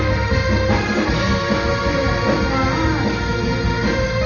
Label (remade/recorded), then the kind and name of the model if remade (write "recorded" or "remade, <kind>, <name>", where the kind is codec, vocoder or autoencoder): recorded